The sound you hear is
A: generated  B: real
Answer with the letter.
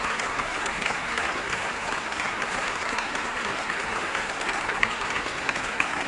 A